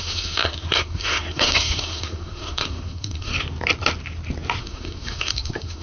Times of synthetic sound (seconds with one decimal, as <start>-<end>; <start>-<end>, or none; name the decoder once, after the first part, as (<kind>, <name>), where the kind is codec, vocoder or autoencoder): 0.0-3.3 (codec, SNAC); 4.6-5.8